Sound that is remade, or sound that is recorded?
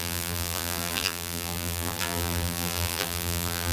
remade